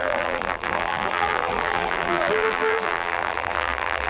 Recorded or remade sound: remade